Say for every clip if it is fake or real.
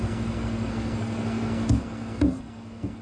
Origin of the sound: fake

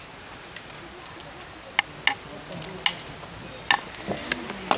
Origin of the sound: real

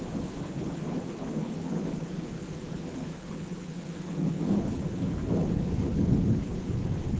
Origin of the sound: fake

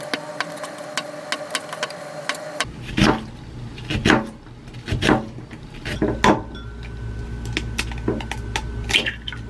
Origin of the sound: real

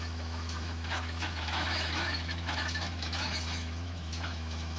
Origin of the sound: fake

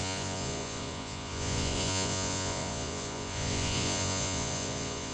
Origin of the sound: fake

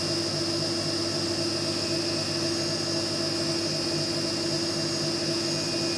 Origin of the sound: real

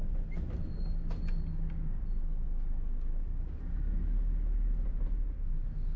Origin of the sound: real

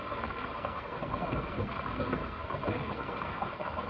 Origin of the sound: fake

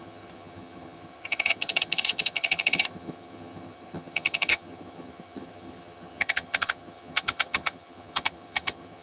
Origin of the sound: fake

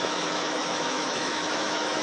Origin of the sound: fake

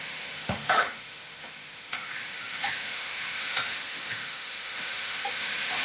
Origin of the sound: fake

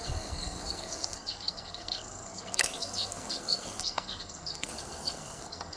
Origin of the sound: fake